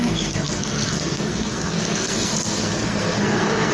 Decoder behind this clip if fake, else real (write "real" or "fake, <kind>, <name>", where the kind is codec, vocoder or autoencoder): fake, codec, SNAC